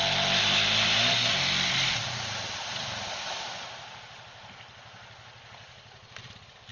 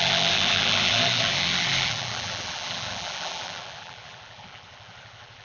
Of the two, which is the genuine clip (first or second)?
first